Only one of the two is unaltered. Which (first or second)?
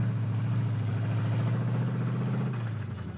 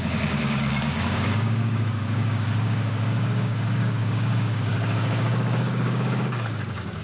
first